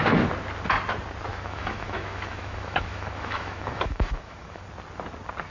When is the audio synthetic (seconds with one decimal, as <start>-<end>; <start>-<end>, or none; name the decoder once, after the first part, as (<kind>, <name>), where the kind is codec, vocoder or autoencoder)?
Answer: 1.3-4.6 (autoencoder, DAC-VAE)